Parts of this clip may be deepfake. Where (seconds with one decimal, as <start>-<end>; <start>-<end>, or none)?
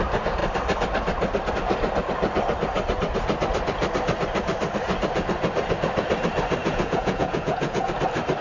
6.6-7.9